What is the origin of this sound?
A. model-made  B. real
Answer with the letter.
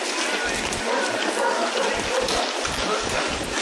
B